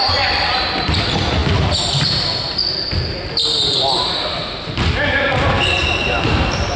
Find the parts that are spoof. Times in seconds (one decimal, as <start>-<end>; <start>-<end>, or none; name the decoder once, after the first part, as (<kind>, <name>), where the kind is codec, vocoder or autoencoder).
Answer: 0.0-6.8 (vocoder, BigVGAN v2)